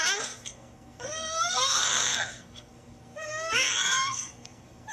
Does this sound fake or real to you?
fake